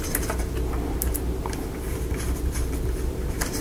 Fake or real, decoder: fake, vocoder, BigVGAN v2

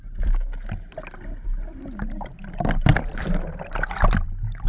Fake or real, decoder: real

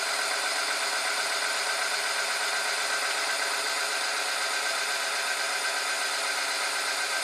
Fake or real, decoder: real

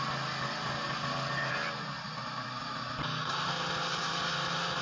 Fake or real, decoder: real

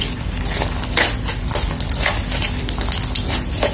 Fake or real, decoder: real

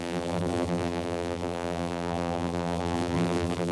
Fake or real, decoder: fake, vocoder, BigVGAN v2